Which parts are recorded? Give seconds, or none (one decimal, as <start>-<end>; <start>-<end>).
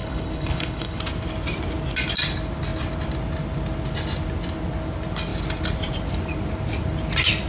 1.0-7.5